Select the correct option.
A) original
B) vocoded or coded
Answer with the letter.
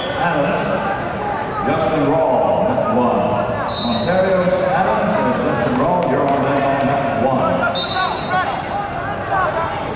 A